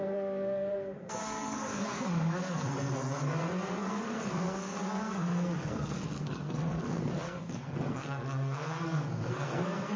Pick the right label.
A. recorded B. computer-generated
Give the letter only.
B